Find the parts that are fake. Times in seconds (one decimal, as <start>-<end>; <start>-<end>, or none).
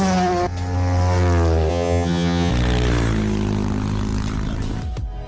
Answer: 1.7-2.5